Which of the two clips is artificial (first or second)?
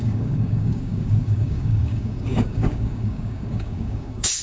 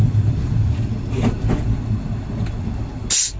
first